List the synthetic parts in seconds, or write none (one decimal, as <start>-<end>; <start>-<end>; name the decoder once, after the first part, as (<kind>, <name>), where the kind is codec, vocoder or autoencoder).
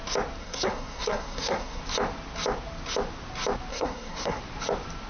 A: 0.4-1.8 (codec, SNAC); 3.7-4.4